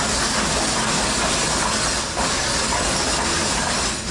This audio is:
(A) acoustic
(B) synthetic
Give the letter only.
A